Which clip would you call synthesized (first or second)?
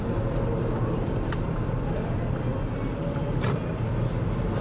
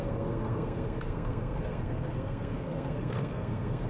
second